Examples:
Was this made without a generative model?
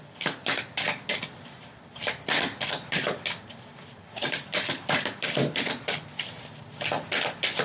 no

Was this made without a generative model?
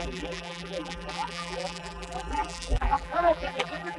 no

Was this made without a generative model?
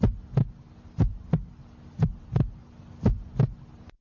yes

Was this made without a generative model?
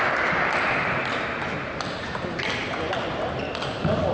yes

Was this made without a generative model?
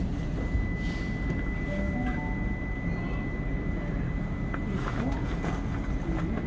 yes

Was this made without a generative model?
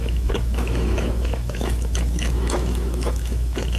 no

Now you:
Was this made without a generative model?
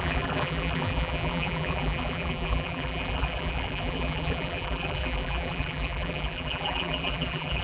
no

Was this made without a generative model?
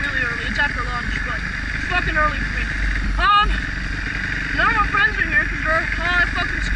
yes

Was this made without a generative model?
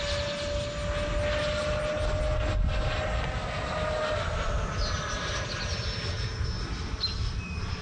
yes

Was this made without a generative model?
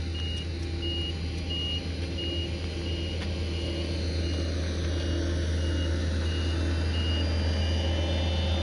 yes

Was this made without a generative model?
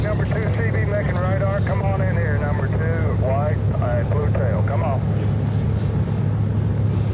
yes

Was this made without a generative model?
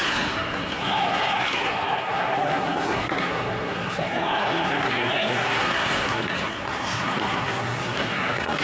no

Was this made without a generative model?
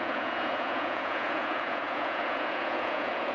no